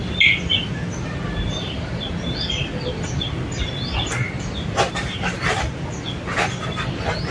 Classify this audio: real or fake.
real